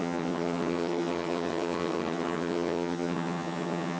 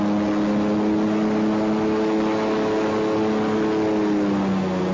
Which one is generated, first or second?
first